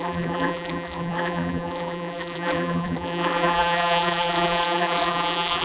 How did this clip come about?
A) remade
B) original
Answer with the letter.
A